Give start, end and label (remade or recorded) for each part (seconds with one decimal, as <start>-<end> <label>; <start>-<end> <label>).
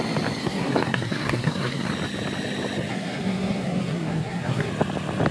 0.0-0.4 recorded; 0.4-1.9 remade; 1.9-2.9 recorded; 2.9-4.7 remade; 4.7-5.3 recorded